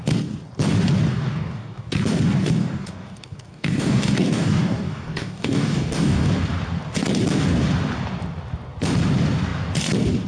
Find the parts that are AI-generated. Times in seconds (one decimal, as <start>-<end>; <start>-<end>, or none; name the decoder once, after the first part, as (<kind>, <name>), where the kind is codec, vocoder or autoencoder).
1.1-1.9 (codec, DAC); 2.6-6.3